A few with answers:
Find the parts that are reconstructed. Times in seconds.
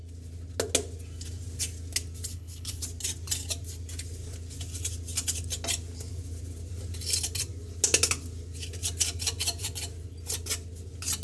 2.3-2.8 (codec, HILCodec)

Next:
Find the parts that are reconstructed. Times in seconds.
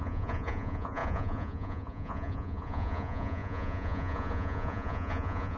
0.0-5.6 (vocoder, Vocos)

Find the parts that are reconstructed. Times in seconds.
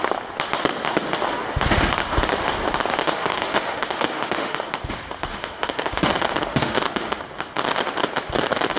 3.0-4.7 (autoencoder, DAC-VAE); 5.3-6.1; 6.5-7.2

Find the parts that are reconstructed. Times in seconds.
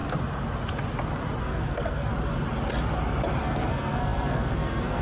1.4-2.1 (codec, SNAC); 3.4-5.0